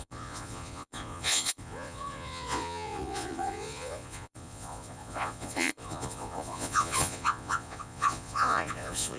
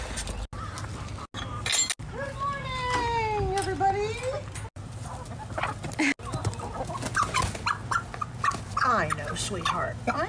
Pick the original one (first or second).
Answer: second